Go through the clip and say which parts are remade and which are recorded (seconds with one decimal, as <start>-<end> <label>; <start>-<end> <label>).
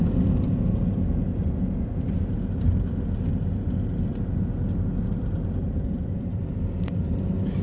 0.0-1.3 recorded; 1.3-2.9 remade; 2.9-5.6 recorded; 5.6-6.4 remade; 6.4-7.6 recorded